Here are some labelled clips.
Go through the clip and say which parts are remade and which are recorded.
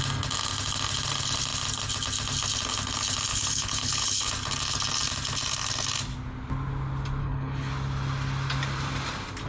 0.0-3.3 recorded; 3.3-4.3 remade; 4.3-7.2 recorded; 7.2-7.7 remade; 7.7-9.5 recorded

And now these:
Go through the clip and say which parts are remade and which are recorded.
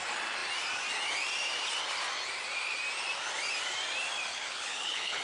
0.0-4.3 recorded; 4.3-5.2 remade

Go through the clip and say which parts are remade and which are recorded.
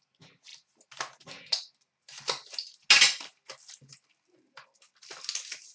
0.0-5.7 recorded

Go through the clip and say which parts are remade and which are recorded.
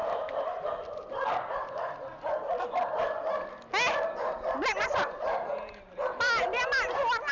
0.0-7.3 recorded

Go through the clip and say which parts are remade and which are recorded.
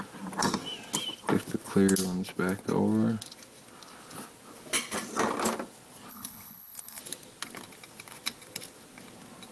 0.0-6.1 recorded; 6.1-7.0 remade; 7.0-9.5 recorded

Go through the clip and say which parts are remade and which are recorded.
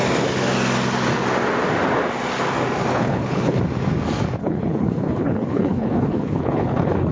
0.0-2.9 recorded; 2.9-3.6 remade; 3.6-4.4 recorded; 4.4-7.1 remade